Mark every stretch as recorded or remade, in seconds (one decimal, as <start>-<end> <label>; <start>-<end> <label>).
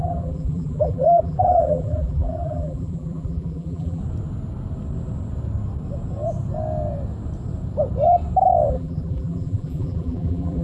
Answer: 0.0-4.0 remade; 4.0-8.7 recorded; 8.7-10.6 remade